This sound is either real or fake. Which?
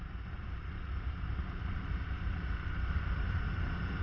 fake